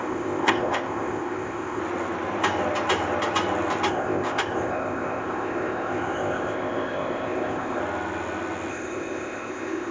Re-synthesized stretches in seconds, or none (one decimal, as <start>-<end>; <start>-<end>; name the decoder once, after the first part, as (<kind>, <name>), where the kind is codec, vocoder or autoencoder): 0.0-1.8 (codec, ZipCodec); 3.9-7.8; 8.7-9.9